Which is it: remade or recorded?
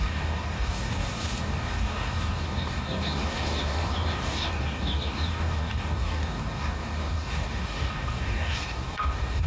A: remade